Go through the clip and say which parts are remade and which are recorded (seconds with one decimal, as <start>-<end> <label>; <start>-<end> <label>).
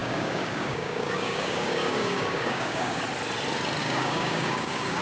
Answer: 0.0-3.0 remade; 3.0-3.8 recorded; 3.8-5.0 remade